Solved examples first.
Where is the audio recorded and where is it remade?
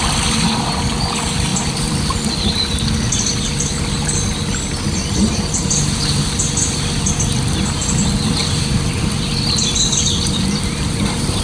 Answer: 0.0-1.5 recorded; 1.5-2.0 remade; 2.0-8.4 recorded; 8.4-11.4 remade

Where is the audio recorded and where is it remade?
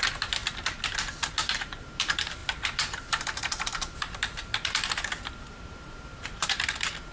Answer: 0.0-0.4 remade; 0.4-1.3 recorded; 1.3-7.1 remade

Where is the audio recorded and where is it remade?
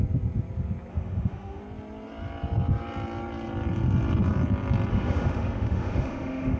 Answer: 0.0-0.9 recorded; 0.9-1.6 remade; 1.6-4.9 recorded; 4.9-6.6 remade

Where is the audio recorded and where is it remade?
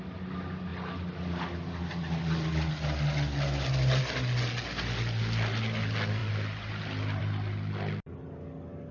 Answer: 0.0-8.9 recorded